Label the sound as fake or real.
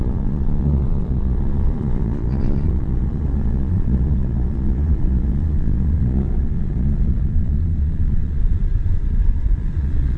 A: fake